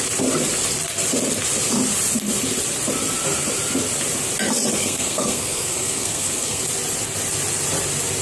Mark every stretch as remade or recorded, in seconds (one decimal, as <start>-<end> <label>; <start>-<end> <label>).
0.0-4.8 recorded; 4.8-6.6 remade; 6.6-8.2 recorded